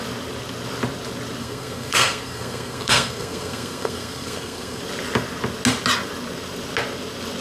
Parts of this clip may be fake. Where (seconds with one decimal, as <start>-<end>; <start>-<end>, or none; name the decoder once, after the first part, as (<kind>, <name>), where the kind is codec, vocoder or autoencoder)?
1.4-4.8 (codec, SNAC)